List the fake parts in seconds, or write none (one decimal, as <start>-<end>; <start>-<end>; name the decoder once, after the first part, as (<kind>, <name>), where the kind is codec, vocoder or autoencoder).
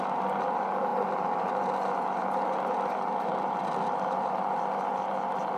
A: none